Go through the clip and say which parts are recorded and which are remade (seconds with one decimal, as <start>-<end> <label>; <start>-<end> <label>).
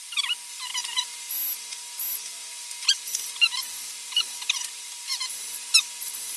0.0-6.4 recorded